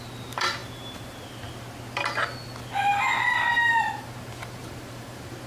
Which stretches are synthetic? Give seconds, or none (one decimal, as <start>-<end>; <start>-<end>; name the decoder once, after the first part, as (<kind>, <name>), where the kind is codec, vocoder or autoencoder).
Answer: 0.0-0.6 (vocoder, BigVGAN v2); 3.8-5.5